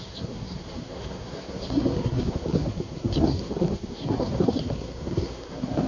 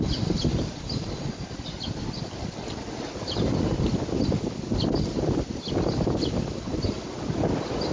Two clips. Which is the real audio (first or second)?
second